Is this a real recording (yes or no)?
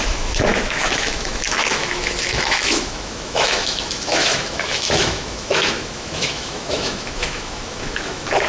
no